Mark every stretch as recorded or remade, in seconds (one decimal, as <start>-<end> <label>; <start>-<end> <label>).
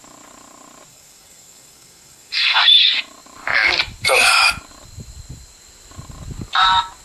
0.0-0.9 recorded; 0.9-2.6 remade; 2.6-7.0 recorded